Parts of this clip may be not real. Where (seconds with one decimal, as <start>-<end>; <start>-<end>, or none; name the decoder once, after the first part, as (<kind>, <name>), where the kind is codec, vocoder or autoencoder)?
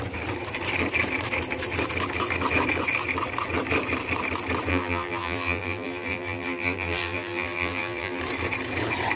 4.7-8.2 (vocoder, BigVGAN v2)